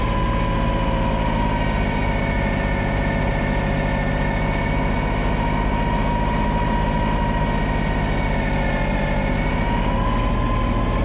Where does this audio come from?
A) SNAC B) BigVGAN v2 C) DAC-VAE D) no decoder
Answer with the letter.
D